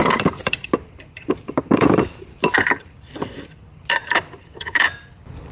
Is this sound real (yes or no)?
no